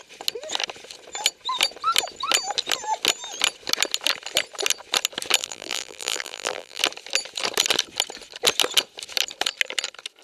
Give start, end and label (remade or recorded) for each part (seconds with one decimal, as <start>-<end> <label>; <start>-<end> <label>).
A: 0.0-5.4 recorded; 5.4-6.8 remade; 6.8-10.2 recorded